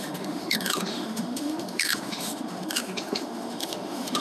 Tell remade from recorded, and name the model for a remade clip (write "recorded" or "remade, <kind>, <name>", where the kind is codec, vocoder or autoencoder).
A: remade, autoencoder, DAC-VAE